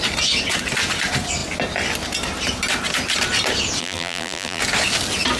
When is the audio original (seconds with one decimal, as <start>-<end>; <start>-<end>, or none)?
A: 0.0-3.8; 4.6-5.4